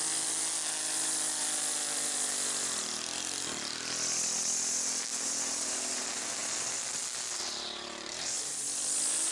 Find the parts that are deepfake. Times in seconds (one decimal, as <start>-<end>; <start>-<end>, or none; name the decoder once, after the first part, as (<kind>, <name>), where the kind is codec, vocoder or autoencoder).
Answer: none